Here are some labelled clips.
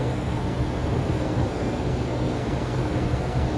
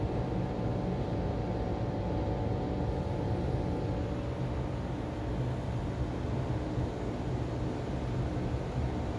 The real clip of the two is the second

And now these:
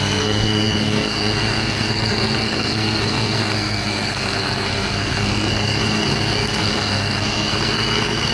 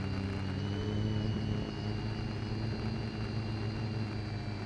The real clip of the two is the second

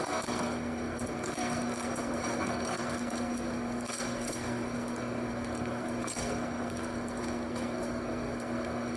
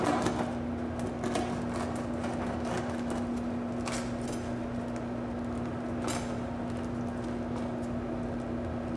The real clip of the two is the second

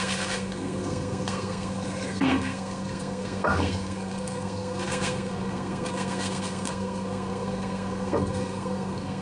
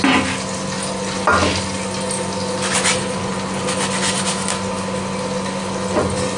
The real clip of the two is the second